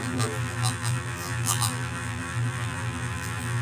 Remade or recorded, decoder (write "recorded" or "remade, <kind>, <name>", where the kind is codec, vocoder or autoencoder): remade, vocoder, BigVGAN v2